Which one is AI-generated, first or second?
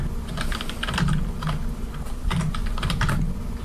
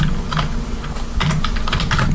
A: first